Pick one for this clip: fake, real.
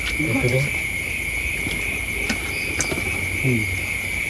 real